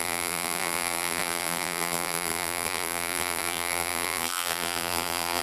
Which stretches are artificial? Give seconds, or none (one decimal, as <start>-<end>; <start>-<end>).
0.0-5.4

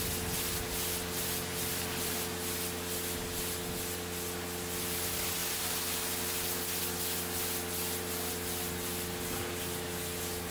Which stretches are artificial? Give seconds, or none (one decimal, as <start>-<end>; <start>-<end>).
1.5-2.1

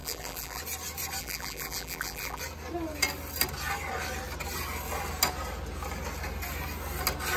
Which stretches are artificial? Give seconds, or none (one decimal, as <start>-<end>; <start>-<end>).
0.0-0.6; 1.2-2.4

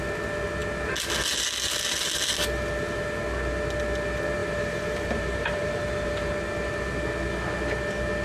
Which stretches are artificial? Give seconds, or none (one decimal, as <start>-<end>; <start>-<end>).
4.4-6.3

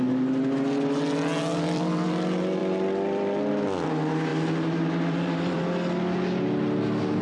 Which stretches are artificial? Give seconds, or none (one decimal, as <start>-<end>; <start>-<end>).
1.5-2.1; 2.6-3.5; 4.3-5.6

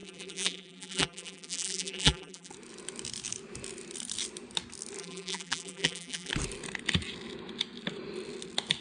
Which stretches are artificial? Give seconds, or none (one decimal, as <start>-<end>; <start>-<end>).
0.0-2.5; 5.0-6.3